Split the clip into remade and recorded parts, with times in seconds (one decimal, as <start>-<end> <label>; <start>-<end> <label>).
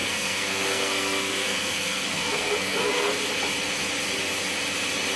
0.0-3.1 remade; 3.1-5.2 recorded